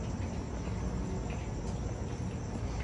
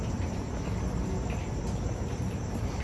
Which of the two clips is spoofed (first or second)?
second